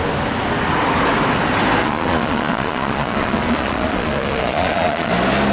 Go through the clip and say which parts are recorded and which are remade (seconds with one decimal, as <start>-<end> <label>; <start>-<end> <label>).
0.0-1.8 recorded; 1.8-5.1 remade; 5.1-5.5 recorded